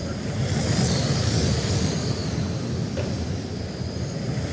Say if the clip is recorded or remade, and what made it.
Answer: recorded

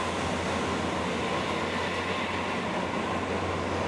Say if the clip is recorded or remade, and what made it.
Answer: recorded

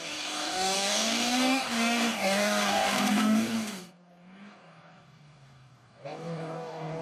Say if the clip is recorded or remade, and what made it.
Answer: remade, codec, DAC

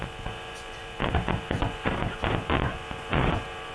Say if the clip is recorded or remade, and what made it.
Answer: remade, vocoder, Vocos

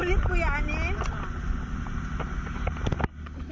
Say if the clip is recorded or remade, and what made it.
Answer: recorded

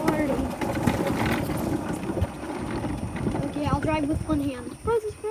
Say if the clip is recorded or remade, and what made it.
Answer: recorded